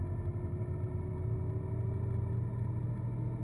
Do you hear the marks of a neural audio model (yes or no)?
no